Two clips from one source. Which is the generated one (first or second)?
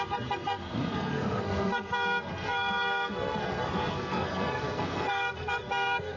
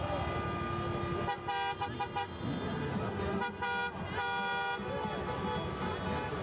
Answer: first